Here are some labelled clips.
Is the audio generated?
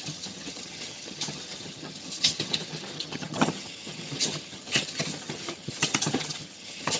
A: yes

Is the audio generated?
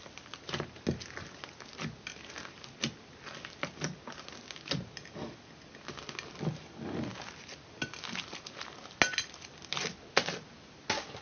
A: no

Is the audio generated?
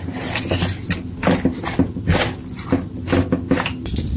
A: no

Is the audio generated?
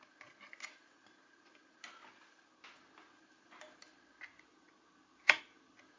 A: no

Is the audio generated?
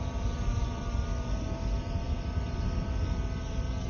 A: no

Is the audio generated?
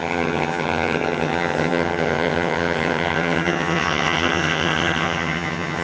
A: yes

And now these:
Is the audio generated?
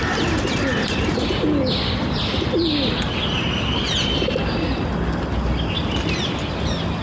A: no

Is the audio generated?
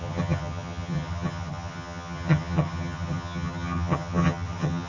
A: yes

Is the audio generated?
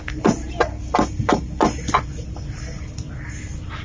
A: no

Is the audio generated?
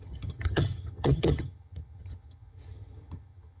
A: yes